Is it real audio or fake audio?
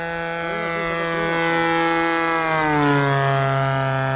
real